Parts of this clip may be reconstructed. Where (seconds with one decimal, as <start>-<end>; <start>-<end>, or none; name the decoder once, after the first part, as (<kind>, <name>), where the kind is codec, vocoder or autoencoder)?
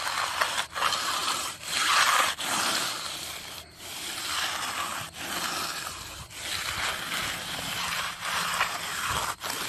1.2-4.2 (vocoder, BigVGAN v2); 7.2-8.8